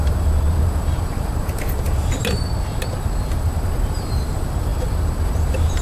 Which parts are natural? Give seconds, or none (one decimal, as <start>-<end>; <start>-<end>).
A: 2.2-3.0